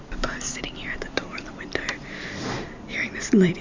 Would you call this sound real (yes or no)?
no